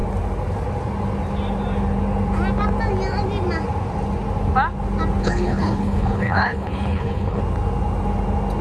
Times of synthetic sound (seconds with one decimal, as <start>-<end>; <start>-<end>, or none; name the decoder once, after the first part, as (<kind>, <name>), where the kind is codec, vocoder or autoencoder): 5.2-7.4 (codec, HILCodec)